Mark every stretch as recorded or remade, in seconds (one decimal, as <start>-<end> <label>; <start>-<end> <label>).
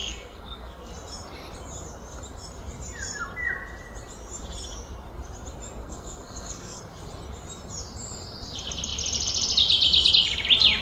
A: 0.0-0.9 remade; 0.9-5.8 recorded; 5.8-6.8 remade; 6.8-10.8 recorded